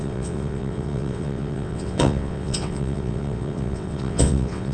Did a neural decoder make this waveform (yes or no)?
yes